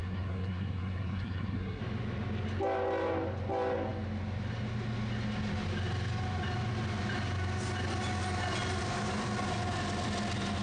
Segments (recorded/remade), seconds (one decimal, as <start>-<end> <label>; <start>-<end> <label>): 0.0-1.8 remade; 1.8-10.6 recorded